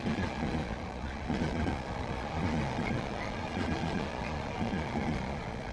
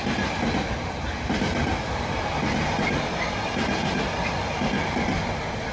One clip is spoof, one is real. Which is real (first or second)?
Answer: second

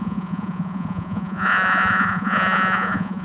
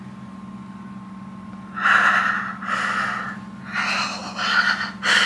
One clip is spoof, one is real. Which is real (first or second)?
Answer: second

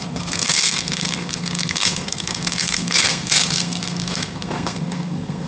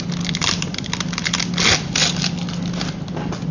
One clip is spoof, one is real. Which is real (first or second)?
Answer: second